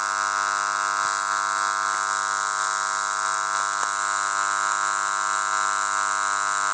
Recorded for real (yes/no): yes